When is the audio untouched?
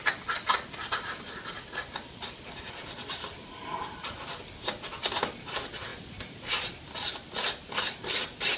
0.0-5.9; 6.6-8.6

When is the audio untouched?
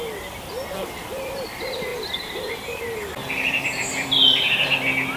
0.0-1.9; 2.8-3.2; 4.7-5.2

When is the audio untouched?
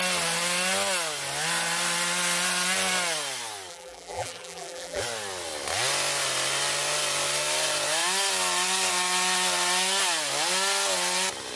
0.0-3.7; 5.0-11.6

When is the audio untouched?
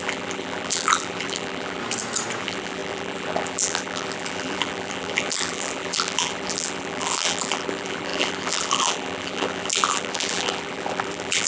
1.8-2.4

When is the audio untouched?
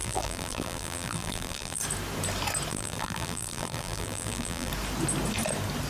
1.8-2.7; 4.7-5.9